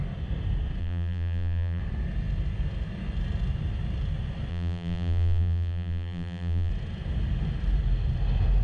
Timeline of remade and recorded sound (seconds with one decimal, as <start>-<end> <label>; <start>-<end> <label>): 0.0-0.8 recorded; 0.8-1.8 remade; 1.8-4.5 recorded; 4.5-6.7 remade; 6.7-8.6 recorded